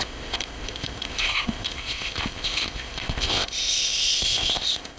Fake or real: fake